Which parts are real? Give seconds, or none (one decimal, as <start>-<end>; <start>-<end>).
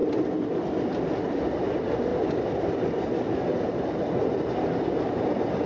0.0-5.7